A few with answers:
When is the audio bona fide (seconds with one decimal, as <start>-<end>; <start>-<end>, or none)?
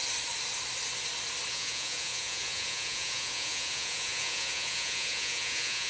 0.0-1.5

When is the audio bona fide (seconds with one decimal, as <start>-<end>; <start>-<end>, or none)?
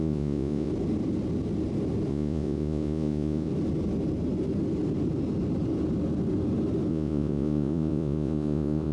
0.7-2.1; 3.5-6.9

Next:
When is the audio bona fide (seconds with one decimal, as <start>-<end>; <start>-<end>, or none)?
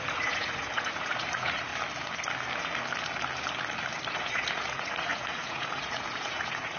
1.7-4.1